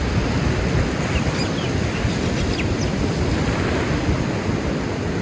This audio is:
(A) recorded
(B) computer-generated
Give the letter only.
A